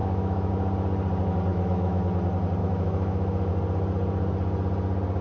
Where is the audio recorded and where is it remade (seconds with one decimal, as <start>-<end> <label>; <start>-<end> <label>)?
0.0-0.5 remade; 0.5-1.5 recorded; 1.5-2.0 remade; 2.0-2.6 recorded; 2.6-3.5 remade; 3.5-5.2 recorded